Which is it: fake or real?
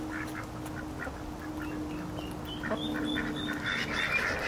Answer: real